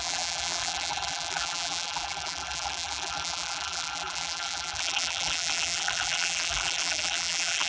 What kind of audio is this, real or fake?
fake